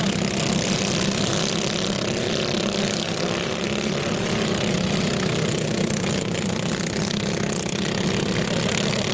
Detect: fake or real real